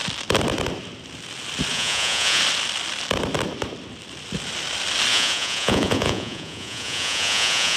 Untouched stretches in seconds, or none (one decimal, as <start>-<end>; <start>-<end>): 0.0-1.7; 2.4-5.1